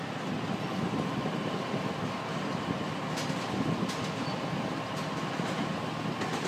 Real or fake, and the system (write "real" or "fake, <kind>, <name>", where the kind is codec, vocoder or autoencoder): real